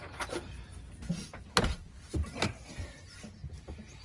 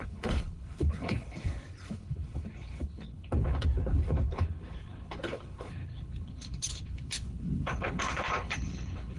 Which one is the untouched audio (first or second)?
first